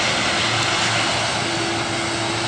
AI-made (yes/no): no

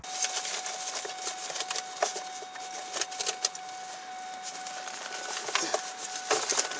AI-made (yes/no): no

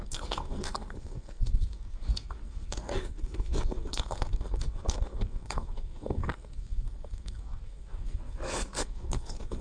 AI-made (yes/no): yes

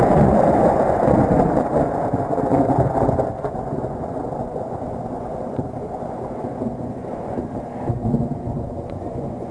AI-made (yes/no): yes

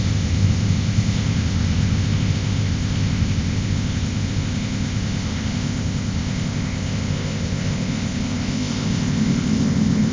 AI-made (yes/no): yes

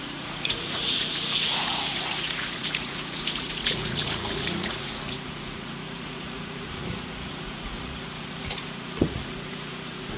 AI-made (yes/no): yes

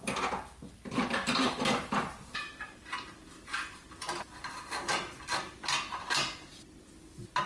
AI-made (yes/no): yes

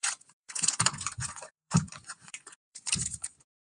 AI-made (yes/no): yes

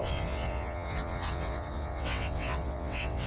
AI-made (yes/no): yes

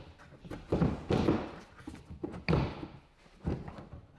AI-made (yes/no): no